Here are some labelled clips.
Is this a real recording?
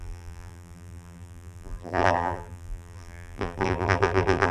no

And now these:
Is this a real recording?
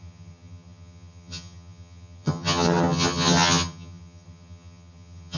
no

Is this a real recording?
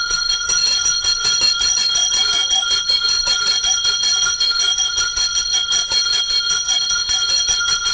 no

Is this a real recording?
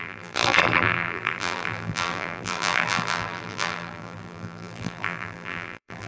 no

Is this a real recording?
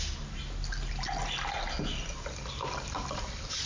yes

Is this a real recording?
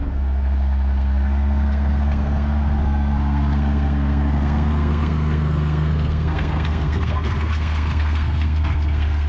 no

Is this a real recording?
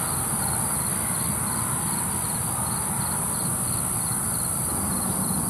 yes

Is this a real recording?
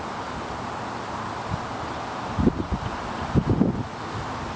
yes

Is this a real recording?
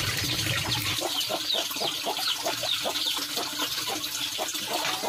yes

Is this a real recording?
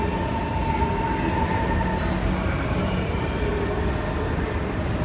yes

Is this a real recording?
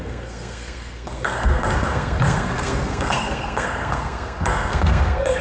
no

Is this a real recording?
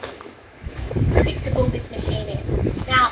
no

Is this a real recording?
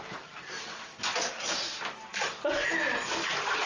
yes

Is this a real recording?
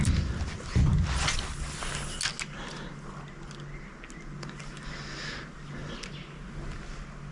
yes